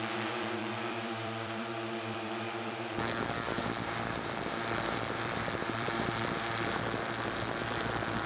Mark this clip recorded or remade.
remade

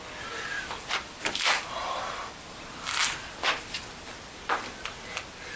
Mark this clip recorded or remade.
remade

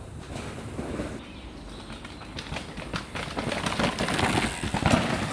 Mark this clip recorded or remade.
recorded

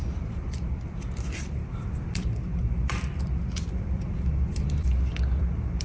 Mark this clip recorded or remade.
remade